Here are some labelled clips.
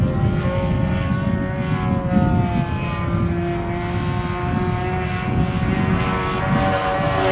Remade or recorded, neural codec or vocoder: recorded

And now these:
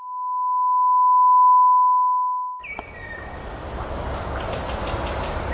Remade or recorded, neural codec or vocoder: recorded